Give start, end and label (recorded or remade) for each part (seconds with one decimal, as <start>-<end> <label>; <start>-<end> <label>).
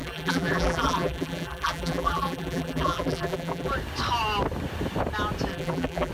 0.0-3.7 remade; 3.7-5.5 recorded; 5.5-6.1 remade